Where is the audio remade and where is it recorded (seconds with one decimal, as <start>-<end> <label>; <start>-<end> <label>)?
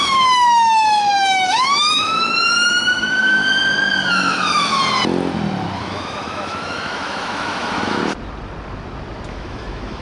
0.0-3.4 remade; 3.4-4.1 recorded; 4.1-4.8 remade; 4.8-5.8 recorded; 5.8-8.0 remade; 8.0-9.3 recorded; 9.3-10.0 remade